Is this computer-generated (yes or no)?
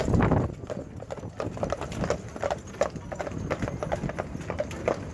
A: no